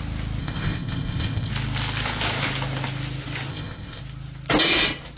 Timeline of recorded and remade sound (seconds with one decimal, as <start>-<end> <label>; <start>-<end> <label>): 0.0-0.4 recorded; 0.4-1.5 remade; 1.5-3.5 recorded; 3.5-4.0 remade; 4.0-5.2 recorded